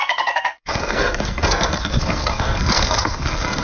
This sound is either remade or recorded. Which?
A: remade